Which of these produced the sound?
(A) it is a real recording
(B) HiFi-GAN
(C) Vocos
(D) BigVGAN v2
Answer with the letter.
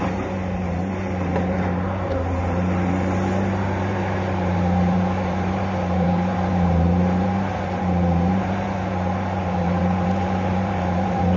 D